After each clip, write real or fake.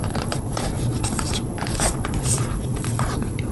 fake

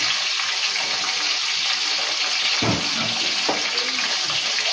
real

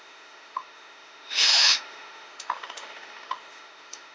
fake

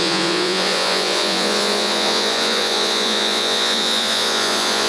fake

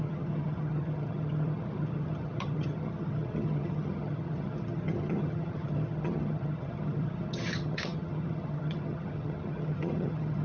fake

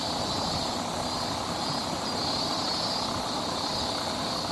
fake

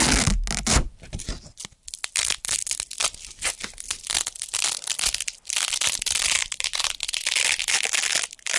real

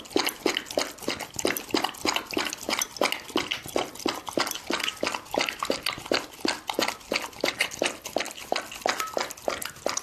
real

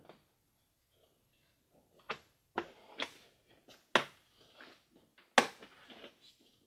real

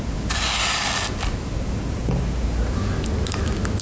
real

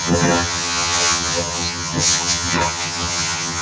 fake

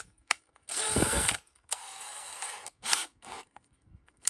fake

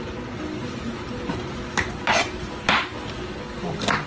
real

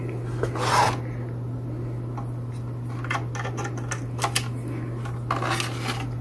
real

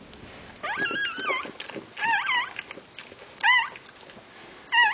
real